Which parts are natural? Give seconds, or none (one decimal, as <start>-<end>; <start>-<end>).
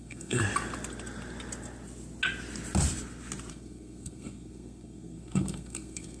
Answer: 0.4-3.5